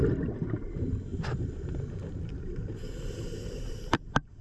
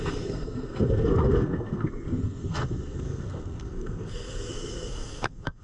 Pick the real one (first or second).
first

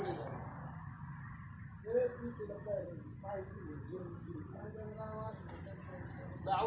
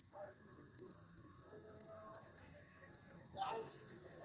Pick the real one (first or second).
first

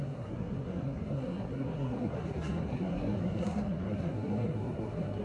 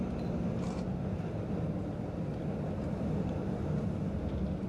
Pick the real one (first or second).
second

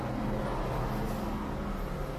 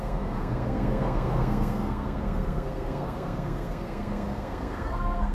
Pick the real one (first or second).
first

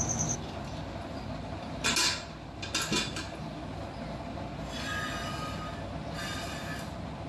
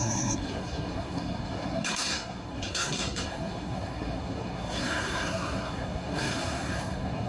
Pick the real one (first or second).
first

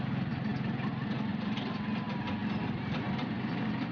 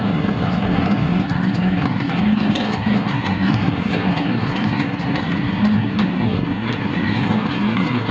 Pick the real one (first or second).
first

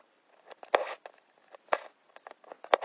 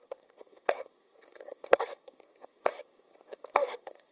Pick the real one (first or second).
first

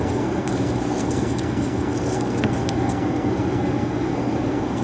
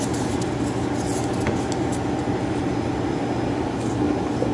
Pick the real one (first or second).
second